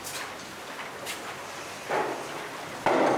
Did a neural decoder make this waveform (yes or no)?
no